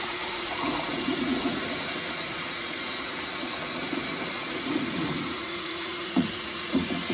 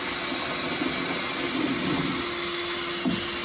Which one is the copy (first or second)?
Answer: first